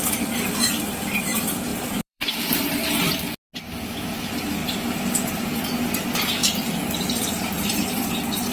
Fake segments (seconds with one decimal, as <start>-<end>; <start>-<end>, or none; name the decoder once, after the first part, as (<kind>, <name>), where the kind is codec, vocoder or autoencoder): 1.7-2.5 (vocoder, BigVGAN v2); 6.4-8.1